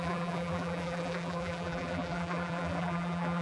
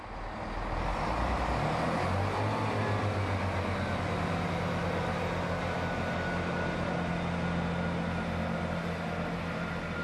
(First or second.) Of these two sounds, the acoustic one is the second